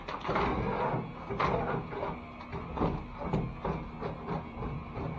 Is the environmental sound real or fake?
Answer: real